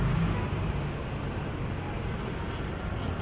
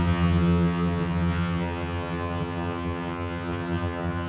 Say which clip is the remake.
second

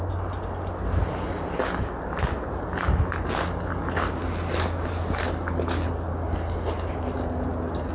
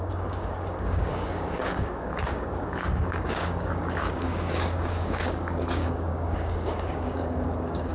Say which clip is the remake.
second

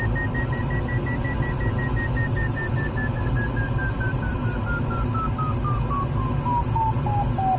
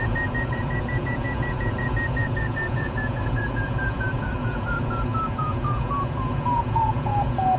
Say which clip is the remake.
second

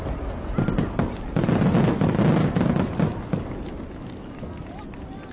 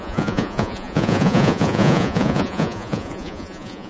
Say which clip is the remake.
second